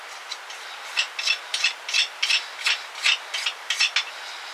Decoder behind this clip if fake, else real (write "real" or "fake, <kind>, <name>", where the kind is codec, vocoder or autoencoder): real